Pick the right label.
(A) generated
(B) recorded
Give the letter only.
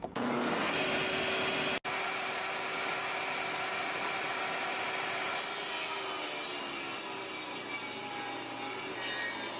B